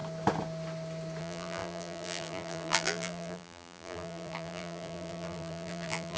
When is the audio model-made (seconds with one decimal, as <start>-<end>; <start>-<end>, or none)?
1.2-6.2